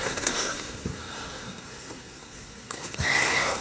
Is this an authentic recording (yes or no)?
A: no